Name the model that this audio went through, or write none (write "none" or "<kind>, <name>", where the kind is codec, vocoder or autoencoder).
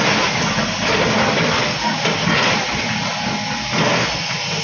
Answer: none